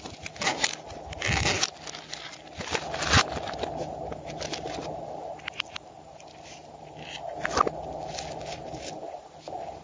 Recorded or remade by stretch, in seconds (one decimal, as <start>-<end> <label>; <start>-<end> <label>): 0.0-9.8 recorded